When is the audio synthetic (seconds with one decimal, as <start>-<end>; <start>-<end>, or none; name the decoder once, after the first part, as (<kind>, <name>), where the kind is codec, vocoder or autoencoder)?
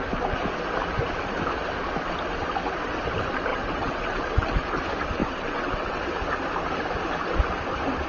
3.5-4.8 (vocoder, WaveNeXt); 5.2-6.0